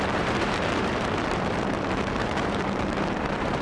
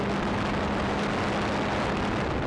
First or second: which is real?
second